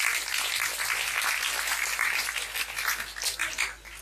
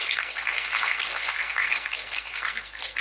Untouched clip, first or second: first